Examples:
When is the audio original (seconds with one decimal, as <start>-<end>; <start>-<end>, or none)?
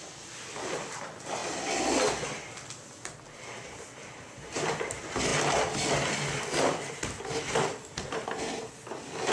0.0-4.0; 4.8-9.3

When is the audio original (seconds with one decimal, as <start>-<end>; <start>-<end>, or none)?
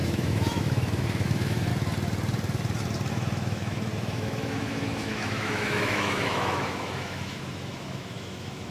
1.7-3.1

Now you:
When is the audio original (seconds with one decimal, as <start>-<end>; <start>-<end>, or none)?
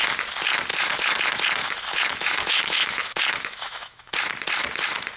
0.0-0.7; 1.2-1.6; 4.1-5.2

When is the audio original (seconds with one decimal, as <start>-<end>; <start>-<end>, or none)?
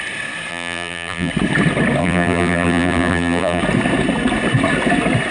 0.0-0.5; 1.3-2.0; 3.6-5.3